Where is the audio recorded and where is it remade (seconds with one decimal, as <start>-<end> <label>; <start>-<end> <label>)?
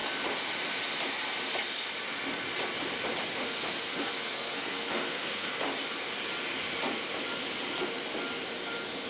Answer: 0.0-4.2 recorded; 4.2-5.5 remade; 5.5-9.1 recorded